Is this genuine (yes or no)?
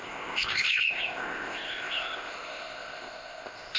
no